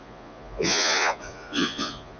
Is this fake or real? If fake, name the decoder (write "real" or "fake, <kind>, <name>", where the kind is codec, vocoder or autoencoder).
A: fake, vocoder, Vocos